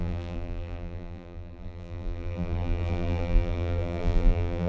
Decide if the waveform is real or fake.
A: fake